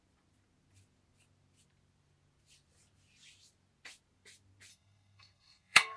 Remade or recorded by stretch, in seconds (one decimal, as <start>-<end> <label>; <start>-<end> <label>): 0.0-4.7 recorded; 4.7-6.0 remade

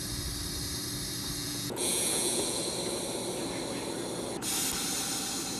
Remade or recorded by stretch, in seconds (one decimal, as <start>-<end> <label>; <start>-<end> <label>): 0.0-1.4 recorded; 1.4-2.6 remade; 2.6-5.6 recorded

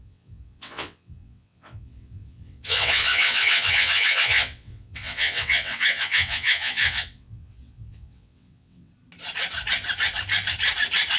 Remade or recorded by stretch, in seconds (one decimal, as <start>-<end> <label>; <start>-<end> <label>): 0.0-8.9 remade; 8.9-11.2 recorded

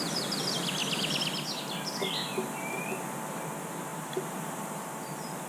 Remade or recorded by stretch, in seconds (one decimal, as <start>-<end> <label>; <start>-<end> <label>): 0.0-3.9 recorded; 3.9-4.6 remade; 4.6-5.5 recorded

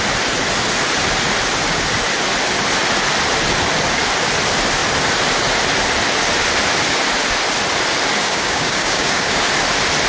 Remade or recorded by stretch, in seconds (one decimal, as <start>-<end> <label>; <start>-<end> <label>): 0.0-8.2 recorded; 8.2-9.4 remade; 9.4-10.1 recorded

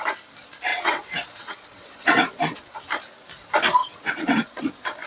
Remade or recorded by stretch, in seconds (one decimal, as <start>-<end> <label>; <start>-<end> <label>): 0.0-0.7 recorded; 0.7-2.7 remade; 2.7-3.8 recorded; 3.8-4.6 remade; 4.6-5.1 recorded

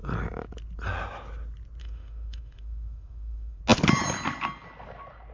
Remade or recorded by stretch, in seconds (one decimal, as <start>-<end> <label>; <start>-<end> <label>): 0.0-1.8 recorded; 1.8-3.6 remade; 3.6-5.3 recorded